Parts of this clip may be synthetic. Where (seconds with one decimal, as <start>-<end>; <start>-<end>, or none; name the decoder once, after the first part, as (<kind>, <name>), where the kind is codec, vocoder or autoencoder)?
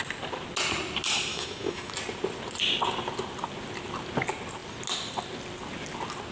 1.3-1.9 (autoencoder, DAC-VAE)